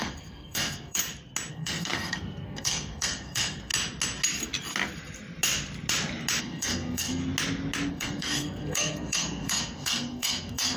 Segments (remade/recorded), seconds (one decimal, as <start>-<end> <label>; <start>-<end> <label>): 0.0-1.0 remade; 1.0-1.5 recorded; 1.5-3.7 remade; 3.7-6.4 recorded; 6.4-7.2 remade; 7.2-7.9 recorded; 7.9-10.8 remade